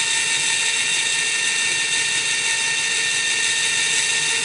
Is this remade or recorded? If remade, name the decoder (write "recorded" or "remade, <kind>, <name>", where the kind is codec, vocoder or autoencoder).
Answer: recorded